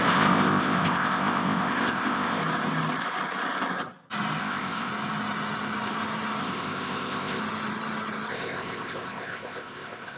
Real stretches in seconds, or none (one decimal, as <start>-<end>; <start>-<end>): 2.4-4.4; 4.9-6.4; 7.4-8.3